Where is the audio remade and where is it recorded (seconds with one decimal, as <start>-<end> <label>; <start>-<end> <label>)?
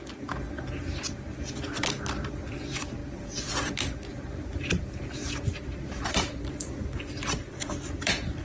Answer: 0.0-0.9 recorded; 0.9-8.4 remade